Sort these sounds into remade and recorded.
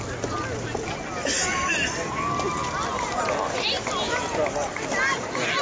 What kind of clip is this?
recorded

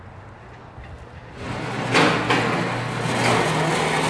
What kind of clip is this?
recorded